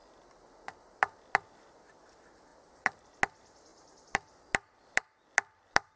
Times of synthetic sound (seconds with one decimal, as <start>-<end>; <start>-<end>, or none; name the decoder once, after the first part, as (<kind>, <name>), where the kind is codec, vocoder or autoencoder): 0.0-1.4 (vocoder, BigVGAN v2); 2.5-3.1; 3.7-6.0